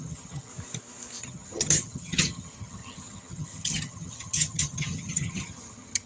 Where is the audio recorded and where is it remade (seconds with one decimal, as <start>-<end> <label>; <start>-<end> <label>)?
0.0-0.5 remade; 0.5-1.2 recorded; 1.2-6.1 remade